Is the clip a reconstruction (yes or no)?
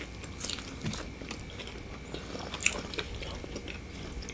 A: no